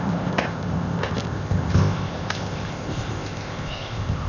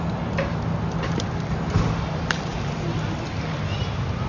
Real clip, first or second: second